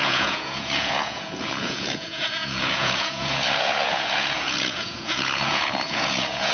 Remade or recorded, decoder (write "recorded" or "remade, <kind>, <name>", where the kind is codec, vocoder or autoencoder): remade, vocoder, Vocos